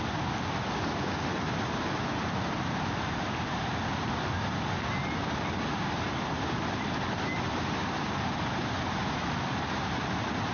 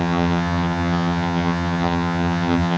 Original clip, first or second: first